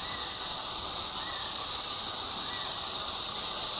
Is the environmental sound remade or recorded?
recorded